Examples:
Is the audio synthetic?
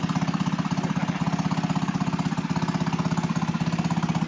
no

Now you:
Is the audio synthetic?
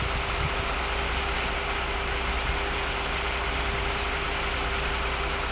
no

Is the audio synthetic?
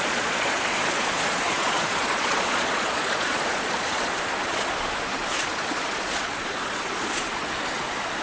yes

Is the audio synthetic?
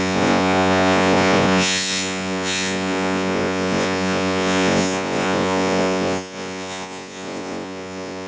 yes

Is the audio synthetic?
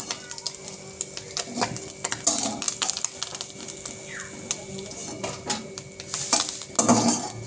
no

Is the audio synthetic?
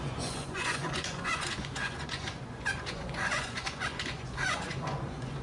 yes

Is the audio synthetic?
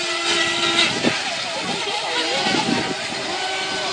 no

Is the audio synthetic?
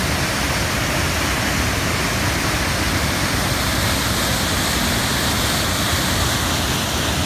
no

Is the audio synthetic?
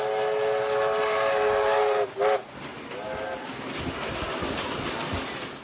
no